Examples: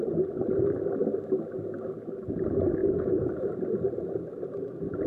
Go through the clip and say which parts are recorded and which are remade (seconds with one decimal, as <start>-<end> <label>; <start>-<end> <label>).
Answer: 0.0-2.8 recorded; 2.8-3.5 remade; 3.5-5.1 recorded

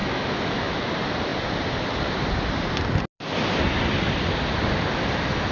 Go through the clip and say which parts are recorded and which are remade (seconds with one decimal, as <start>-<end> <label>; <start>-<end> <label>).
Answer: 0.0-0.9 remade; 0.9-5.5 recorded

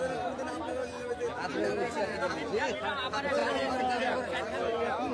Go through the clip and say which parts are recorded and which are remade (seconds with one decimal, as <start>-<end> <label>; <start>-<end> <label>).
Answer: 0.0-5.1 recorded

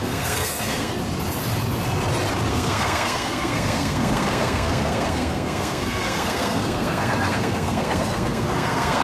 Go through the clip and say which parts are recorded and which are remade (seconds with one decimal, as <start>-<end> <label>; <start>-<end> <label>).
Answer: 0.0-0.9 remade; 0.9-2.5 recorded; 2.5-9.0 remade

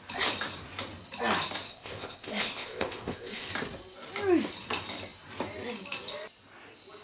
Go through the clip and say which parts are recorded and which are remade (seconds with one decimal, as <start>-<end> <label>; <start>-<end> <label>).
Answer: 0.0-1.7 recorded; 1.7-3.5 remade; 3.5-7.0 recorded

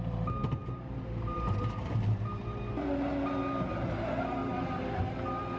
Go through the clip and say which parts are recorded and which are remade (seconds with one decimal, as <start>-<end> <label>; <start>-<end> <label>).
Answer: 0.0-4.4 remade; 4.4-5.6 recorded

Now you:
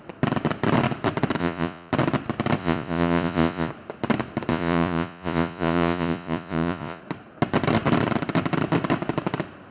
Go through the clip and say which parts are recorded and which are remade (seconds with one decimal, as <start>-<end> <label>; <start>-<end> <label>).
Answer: 0.0-1.4 recorded; 1.4-1.9 remade; 1.9-2.6 recorded; 2.6-3.7 remade; 3.7-4.5 recorded; 4.5-7.0 remade; 7.0-9.7 recorded

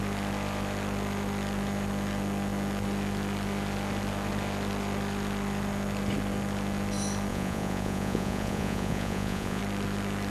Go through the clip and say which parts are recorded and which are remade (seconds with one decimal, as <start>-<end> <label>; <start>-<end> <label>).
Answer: 0.0-7.3 recorded; 7.3-9.6 remade; 9.6-10.3 recorded